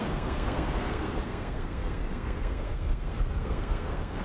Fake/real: fake